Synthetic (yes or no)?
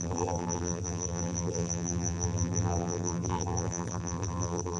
yes